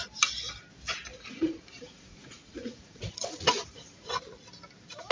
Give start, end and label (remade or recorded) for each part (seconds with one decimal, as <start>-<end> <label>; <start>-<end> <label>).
0.0-1.1 recorded; 1.1-4.1 remade; 4.1-5.1 recorded